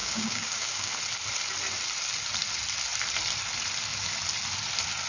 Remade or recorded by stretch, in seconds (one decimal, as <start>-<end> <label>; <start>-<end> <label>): 0.0-0.9 remade; 0.9-5.1 recorded